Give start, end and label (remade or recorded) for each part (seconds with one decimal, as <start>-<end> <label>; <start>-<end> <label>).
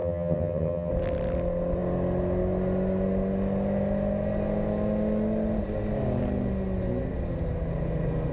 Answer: 0.0-0.9 remade; 0.9-8.3 recorded